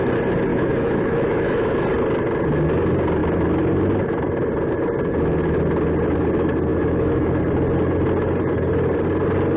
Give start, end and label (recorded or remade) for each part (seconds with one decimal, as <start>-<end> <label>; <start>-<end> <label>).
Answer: 0.0-0.5 recorded; 0.5-1.7 remade; 1.7-6.7 recorded; 6.7-7.4 remade; 7.4-9.6 recorded